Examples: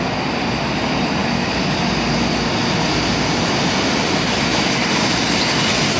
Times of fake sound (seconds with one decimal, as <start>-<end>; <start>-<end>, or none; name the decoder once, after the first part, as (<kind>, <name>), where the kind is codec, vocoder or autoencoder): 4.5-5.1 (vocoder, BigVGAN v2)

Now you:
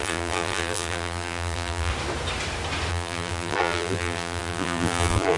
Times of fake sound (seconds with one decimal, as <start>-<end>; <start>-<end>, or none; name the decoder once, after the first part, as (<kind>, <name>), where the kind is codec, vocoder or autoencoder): 0.0-1.9 (vocoder, BigVGAN v2); 2.9-5.4

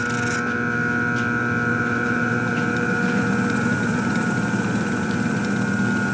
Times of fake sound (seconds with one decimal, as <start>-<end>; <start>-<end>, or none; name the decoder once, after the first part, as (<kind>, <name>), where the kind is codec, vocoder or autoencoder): 1.7-5.4 (vocoder, BigVGAN v2)